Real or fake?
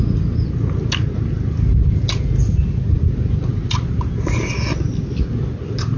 real